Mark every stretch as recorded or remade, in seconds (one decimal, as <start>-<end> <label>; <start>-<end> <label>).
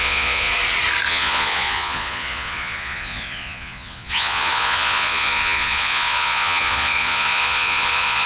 0.0-0.5 remade; 0.5-1.1 recorded; 1.1-8.3 remade